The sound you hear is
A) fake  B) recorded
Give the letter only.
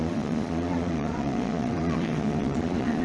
A